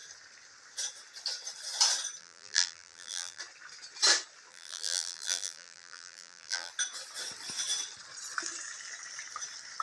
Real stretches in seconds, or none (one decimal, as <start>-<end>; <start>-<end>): 0.0-2.2; 3.4-4.5; 6.7-9.8